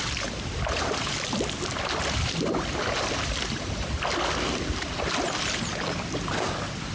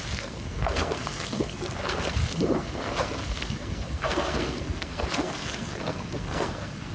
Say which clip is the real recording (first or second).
first